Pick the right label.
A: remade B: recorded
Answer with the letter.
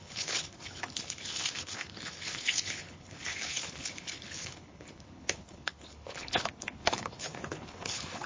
A